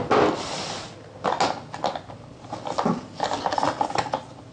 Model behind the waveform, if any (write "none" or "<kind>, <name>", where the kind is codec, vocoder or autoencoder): none